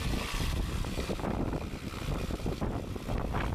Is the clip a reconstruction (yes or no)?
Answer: no